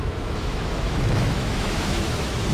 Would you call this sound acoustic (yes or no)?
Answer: no